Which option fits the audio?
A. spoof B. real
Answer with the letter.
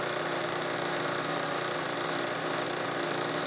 B